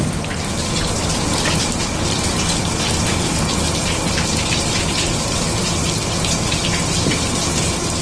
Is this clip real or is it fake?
real